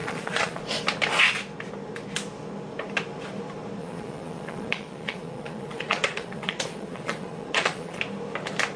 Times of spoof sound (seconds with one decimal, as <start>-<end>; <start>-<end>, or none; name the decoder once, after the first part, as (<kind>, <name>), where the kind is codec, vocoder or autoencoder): 0.0-0.6 (vocoder, Vocos); 3.8-8.0